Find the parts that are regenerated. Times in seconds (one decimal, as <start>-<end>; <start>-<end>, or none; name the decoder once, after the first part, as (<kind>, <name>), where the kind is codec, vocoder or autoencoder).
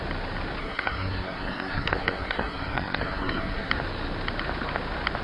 0.6-3.7 (codec, SNAC)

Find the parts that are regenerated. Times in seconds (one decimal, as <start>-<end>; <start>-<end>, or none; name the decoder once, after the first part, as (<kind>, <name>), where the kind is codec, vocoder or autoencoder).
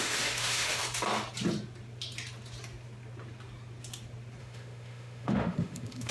0.0-0.8 (autoencoder, DAC-VAE); 4.4-6.1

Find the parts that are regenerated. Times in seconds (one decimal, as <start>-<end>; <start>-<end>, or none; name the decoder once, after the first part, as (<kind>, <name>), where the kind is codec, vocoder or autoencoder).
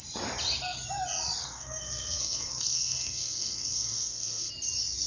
1.4-4.5 (codec, SNAC)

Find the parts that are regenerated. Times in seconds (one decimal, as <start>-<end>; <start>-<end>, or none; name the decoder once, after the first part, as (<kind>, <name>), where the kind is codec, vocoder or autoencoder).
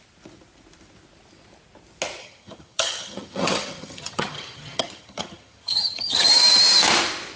2.2-6.3 (vocoder, HiFi-GAN)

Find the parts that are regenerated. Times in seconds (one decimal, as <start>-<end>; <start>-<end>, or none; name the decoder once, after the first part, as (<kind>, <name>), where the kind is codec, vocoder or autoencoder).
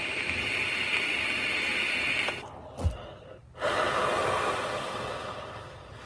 none